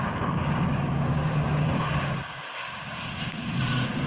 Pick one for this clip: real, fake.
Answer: fake